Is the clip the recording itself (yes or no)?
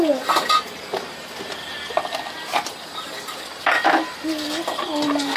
no